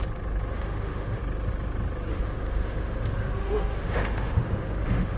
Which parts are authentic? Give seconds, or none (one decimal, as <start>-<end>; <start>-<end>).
0.0-0.5; 1.2-2.1